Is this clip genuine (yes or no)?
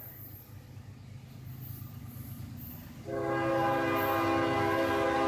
yes